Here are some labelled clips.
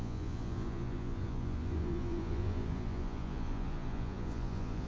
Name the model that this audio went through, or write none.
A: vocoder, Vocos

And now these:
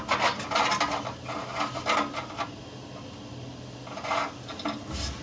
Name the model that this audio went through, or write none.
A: none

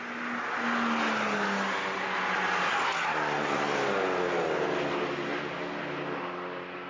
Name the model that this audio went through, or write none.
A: none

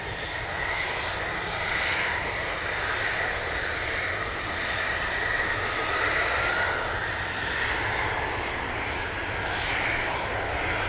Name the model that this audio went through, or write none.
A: none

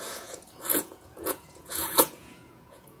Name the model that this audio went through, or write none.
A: vocoder, Vocos